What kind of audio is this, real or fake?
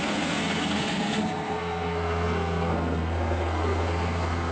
fake